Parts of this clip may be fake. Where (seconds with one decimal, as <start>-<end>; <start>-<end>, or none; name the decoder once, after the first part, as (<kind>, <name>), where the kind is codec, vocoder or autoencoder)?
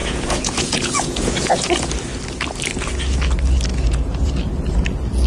0.0-1.9 (vocoder, Vocos); 3.7-4.3